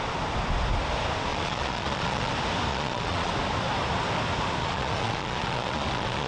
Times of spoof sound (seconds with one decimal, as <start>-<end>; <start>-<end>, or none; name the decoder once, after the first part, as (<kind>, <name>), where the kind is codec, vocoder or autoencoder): 1.3-2.3 (vocoder, Vocos); 2.7-3.3; 4.6-6.3